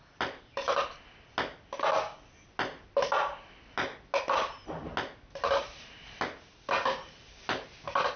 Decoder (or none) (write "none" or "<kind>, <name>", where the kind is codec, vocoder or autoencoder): none